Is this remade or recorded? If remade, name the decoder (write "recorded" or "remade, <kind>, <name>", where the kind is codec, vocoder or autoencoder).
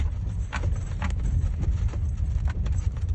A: recorded